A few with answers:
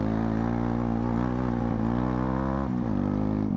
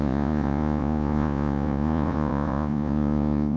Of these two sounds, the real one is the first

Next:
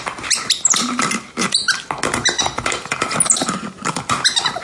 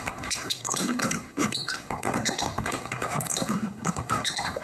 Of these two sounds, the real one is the first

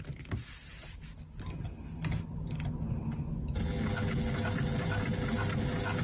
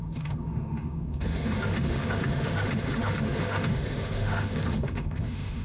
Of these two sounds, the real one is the first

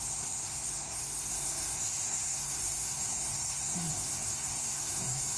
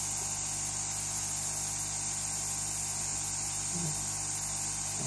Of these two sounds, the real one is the second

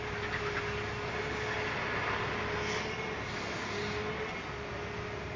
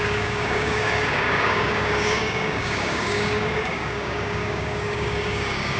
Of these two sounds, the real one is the first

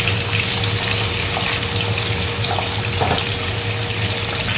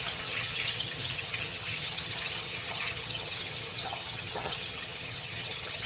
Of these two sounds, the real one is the first